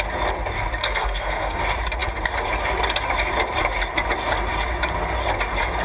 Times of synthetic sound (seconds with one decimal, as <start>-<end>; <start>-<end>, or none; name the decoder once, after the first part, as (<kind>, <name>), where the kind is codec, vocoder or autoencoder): 0.8-1.6 (codec, SNAC)